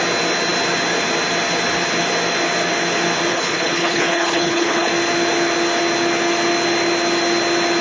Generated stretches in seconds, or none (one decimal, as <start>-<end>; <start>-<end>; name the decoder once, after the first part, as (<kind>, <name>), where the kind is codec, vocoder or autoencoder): 3.3-4.9 (codec, HILCodec)